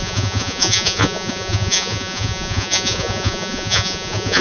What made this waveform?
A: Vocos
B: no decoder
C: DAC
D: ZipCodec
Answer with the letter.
A